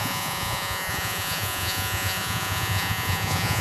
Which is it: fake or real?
fake